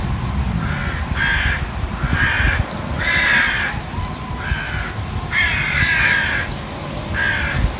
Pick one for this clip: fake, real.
real